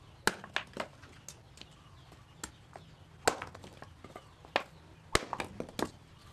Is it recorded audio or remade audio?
recorded